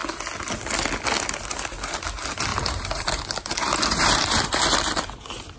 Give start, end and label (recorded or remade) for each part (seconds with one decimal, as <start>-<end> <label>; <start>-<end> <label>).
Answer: 0.0-2.5 recorded; 2.5-4.6 remade; 4.6-5.6 recorded